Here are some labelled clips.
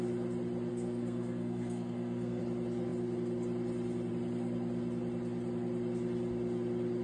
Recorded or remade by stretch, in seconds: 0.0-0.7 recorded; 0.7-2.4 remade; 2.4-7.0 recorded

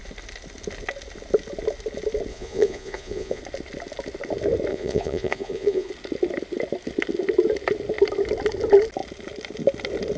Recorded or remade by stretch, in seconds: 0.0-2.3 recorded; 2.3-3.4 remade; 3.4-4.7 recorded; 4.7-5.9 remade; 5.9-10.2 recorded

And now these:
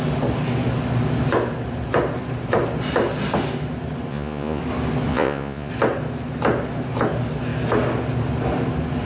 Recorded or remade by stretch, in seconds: 0.0-4.1 recorded; 4.1-4.6 remade; 4.6-5.1 recorded; 5.1-5.7 remade; 5.7-9.1 recorded

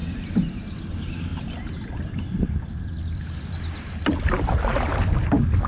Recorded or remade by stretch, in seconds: 0.0-0.6 remade; 0.6-1.3 recorded; 1.3-4.1 remade; 4.1-5.7 recorded

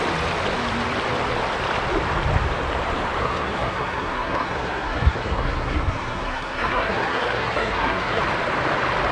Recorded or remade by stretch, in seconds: 0.0-3.2 recorded; 3.2-8.2 remade; 8.2-9.1 recorded

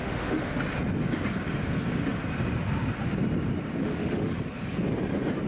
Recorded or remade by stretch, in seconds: 0.0-0.6 remade; 0.6-3.8 recorded; 3.8-4.4 remade; 4.4-5.5 recorded